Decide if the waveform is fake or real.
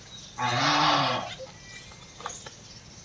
real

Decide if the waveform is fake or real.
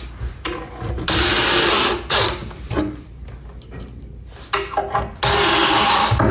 real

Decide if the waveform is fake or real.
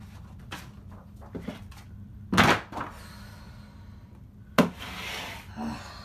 real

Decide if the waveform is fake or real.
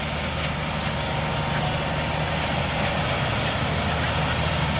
real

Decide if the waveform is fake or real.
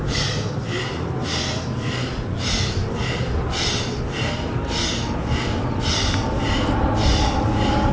real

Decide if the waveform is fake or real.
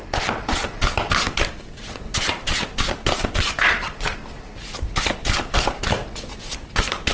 real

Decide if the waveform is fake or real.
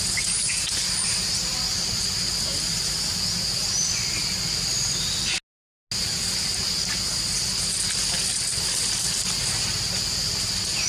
real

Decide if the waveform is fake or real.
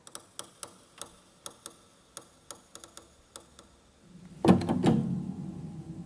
real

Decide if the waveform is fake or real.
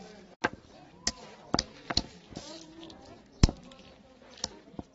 real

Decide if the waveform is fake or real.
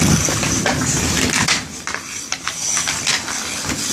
real